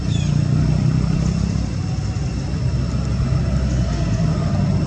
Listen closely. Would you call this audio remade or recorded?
recorded